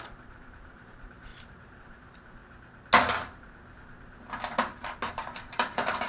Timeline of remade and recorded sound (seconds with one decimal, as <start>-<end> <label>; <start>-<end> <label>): 0.0-2.4 remade; 2.4-5.1 recorded; 5.1-6.1 remade